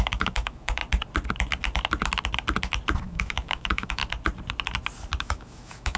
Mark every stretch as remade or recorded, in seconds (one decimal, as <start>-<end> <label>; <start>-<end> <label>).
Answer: 0.0-0.8 remade; 0.8-3.0 recorded; 3.0-4.0 remade; 4.0-5.2 recorded; 5.2-6.0 remade